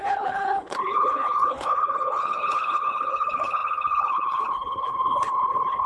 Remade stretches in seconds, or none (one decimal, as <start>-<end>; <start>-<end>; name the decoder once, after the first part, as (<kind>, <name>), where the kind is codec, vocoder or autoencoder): 0.0-5.9 (codec, HILCodec)